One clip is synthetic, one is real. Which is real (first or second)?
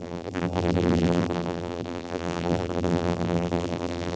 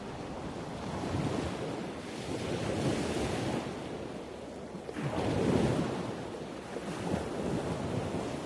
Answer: second